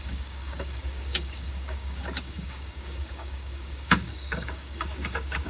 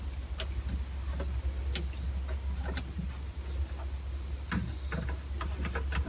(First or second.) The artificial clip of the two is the first